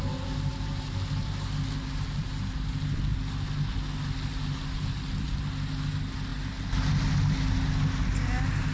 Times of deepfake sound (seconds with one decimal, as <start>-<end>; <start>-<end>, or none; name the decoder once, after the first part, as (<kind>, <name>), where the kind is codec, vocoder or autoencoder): none